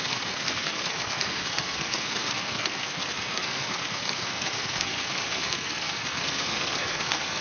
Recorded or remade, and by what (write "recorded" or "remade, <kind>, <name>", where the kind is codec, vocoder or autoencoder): remade, codec, SNAC